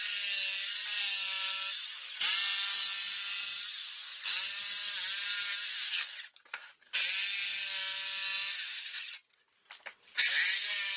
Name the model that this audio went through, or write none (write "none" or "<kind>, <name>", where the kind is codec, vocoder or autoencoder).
none